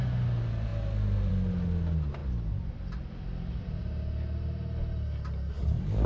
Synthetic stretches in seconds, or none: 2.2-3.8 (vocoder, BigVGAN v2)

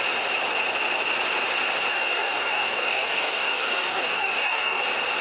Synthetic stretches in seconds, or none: 1.9-4.8 (codec, DAC)

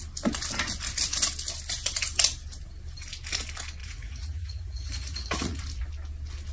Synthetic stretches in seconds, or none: 3.8-5.6 (vocoder, Vocos)

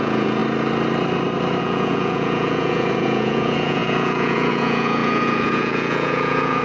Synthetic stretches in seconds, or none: 0.0-0.4 (vocoder, Vocos); 1.6-6.6

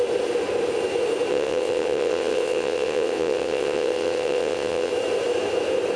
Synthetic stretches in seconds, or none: 1.3-4.9 (vocoder, WaveNeXt)

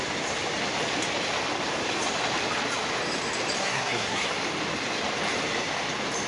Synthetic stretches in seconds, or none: 3.6-4.3 (codec, SNAC)

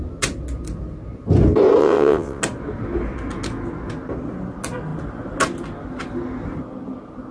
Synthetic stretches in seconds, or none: 1.8-2.4 (vocoder, WaveNeXt)

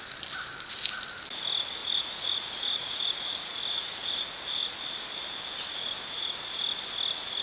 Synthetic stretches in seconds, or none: 1.8-4.8 (vocoder, Vocos)